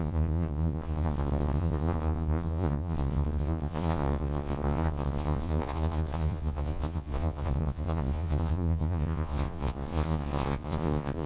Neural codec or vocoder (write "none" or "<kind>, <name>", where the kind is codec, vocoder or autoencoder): vocoder, Vocos